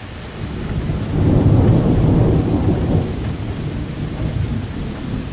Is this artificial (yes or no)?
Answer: no